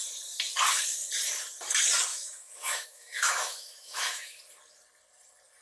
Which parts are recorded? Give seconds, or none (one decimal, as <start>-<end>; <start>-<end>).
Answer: 0.0-2.1; 4.4-5.6